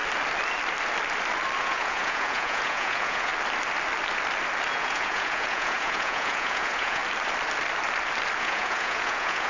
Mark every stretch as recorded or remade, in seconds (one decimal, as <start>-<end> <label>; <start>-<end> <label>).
0.0-1.6 recorded; 1.6-3.3 remade; 3.3-4.7 recorded; 4.7-7.0 remade; 7.0-8.4 recorded; 8.4-9.5 remade